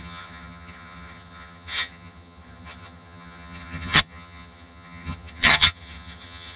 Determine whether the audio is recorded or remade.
remade